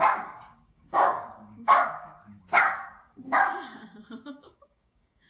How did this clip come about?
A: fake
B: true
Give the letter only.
A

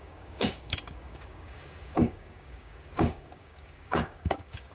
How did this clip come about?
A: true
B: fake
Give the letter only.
B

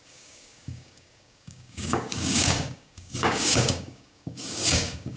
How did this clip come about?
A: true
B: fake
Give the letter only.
B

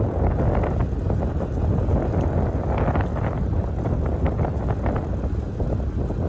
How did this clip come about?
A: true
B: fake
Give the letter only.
A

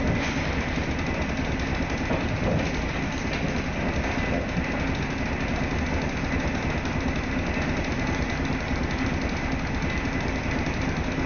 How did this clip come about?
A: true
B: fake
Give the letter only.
A